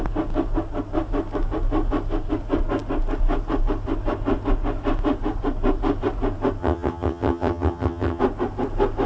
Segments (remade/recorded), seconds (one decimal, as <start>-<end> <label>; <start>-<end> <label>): 0.0-6.6 recorded; 6.6-8.2 remade; 8.2-9.1 recorded